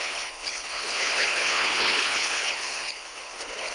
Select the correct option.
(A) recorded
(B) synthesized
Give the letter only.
B